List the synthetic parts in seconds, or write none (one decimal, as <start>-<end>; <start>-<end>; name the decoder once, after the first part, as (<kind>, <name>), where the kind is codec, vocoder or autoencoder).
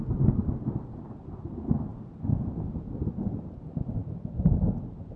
1.9-2.9 (vocoder, BigVGAN v2); 4.0-4.6